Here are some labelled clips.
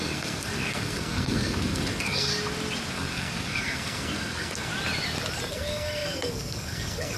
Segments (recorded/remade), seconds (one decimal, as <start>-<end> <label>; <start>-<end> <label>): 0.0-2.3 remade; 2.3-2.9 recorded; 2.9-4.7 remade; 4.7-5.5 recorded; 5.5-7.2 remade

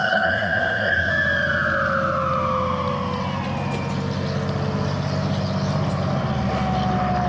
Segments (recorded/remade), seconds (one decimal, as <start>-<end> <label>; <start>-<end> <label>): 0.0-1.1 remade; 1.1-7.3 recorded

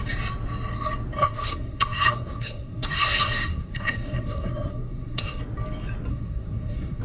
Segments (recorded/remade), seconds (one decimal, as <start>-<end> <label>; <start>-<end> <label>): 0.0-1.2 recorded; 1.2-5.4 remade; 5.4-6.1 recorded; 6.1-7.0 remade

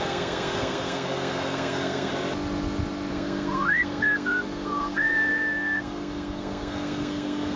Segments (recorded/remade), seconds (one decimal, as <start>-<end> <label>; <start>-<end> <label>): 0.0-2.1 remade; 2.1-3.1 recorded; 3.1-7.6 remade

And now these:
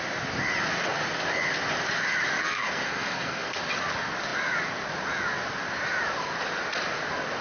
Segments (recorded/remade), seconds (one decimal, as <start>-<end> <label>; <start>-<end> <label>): 0.0-2.4 recorded; 2.4-3.6 remade; 3.6-7.4 recorded

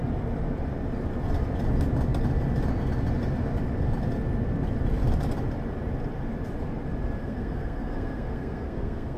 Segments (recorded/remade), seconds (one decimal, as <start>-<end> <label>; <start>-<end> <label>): 0.0-7.2 recorded; 7.2-9.2 remade

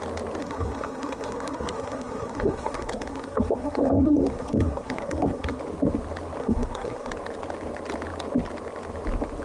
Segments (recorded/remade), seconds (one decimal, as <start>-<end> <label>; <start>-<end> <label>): 0.0-0.4 recorded; 0.4-5.6 remade; 5.6-6.4 recorded; 6.4-7.1 remade; 7.1-9.4 recorded